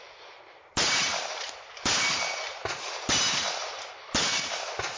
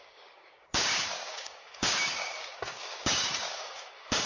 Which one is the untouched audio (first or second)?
first